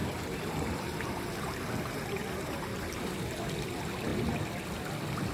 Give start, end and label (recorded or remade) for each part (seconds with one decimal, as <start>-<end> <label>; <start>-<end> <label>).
0.0-3.2 remade; 3.2-5.3 recorded